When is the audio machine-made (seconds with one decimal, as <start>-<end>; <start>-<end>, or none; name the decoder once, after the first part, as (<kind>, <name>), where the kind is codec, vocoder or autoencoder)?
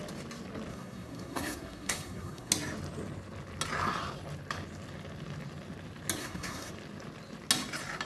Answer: 0.7-2.5 (codec, SNAC); 6.2-6.7